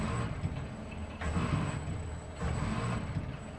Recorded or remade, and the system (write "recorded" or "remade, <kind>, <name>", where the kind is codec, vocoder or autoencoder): recorded